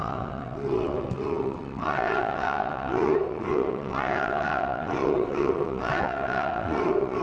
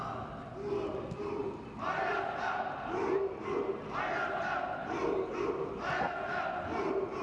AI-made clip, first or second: first